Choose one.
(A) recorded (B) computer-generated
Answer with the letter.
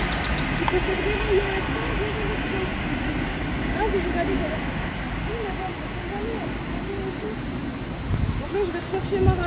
A